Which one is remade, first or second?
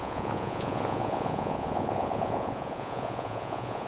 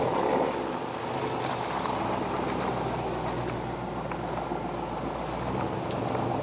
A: first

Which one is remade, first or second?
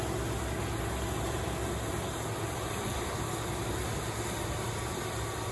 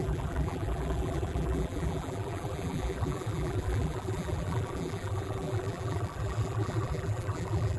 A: second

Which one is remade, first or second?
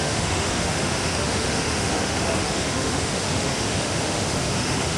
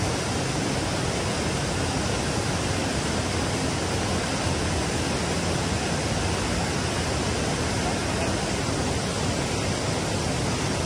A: first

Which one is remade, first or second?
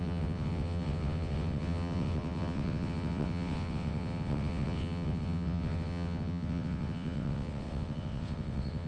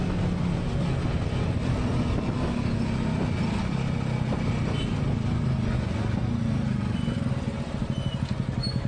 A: first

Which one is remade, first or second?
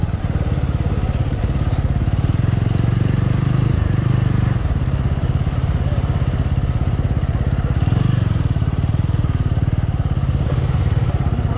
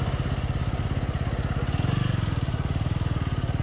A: first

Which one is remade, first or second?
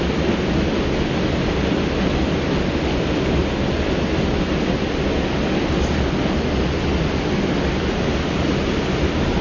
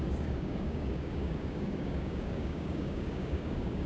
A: second